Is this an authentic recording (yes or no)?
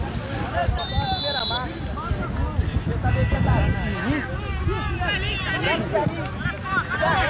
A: yes